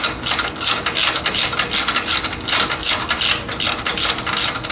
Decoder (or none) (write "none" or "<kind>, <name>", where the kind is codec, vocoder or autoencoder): none